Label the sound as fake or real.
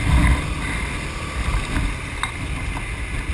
real